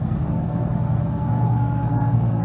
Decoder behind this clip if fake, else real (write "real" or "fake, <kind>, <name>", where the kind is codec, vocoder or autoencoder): fake, codec, SNAC